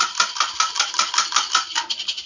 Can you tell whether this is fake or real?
real